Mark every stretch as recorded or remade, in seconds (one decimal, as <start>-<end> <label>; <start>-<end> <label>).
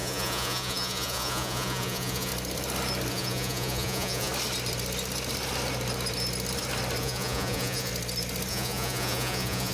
0.0-2.3 remade; 2.3-3.1 recorded; 3.1-4.3 remade; 4.3-7.0 recorded; 7.0-7.9 remade; 7.9-8.5 recorded; 8.5-9.7 remade